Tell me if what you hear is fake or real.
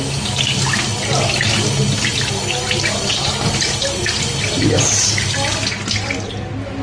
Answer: real